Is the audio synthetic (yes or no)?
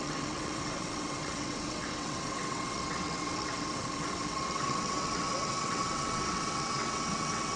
yes